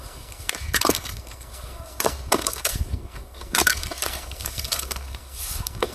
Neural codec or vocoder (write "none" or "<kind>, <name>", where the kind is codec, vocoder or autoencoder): codec, SNAC